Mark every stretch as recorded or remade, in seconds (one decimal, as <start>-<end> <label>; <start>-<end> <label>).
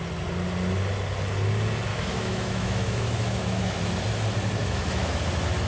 0.0-1.9 recorded; 1.9-3.8 remade; 3.8-4.6 recorded; 4.6-5.2 remade; 5.2-5.7 recorded